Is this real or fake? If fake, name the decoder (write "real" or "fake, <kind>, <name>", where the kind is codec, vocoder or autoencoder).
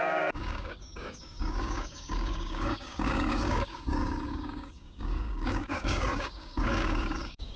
fake, codec, DAC